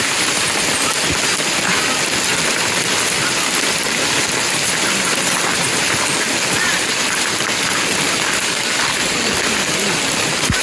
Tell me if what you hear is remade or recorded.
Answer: recorded